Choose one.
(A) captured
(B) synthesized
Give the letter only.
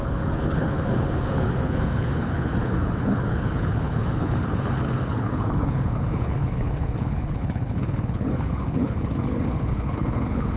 B